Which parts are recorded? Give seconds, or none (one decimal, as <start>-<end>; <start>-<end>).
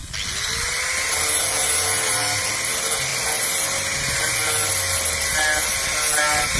0.0-6.6